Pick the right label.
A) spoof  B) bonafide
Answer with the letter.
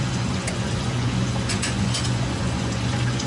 A